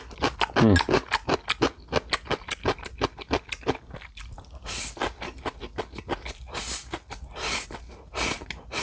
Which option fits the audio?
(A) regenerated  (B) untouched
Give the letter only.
B